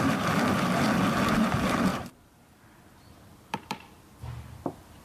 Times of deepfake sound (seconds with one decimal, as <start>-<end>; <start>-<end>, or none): 1.9-4.2

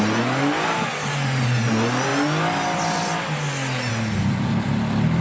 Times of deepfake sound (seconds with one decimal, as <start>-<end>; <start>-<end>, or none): none

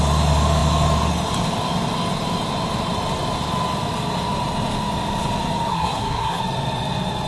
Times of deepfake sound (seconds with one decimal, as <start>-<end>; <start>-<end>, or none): 5.7-6.4

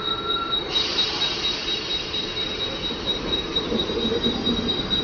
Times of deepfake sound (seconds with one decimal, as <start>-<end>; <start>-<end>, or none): none

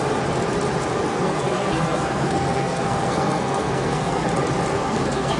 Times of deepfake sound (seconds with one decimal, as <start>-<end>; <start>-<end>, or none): 1.1-4.3; 4.7-5.4

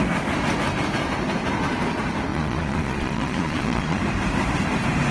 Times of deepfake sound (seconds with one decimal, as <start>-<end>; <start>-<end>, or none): 2.3-4.0

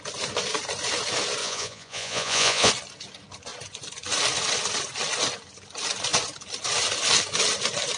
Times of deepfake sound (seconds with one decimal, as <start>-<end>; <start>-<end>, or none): 1.4-2.7

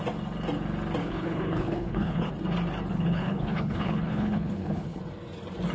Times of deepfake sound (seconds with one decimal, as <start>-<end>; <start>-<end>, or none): 1.0-2.3; 2.9-5.0